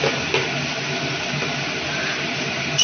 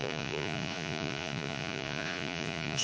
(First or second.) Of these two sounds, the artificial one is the second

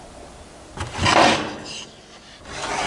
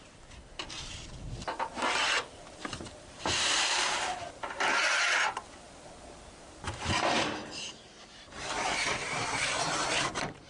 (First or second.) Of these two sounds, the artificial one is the second